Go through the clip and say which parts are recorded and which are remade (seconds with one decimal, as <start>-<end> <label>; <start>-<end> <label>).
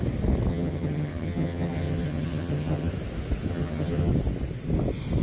0.0-0.5 recorded; 0.5-2.9 remade; 2.9-3.5 recorded; 3.5-4.1 remade; 4.1-5.2 recorded